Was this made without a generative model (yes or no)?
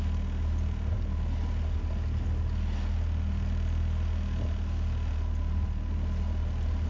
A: yes